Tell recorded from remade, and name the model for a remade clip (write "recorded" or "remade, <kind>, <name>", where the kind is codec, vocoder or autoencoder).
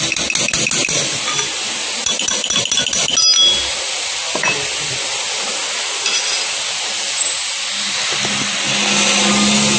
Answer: recorded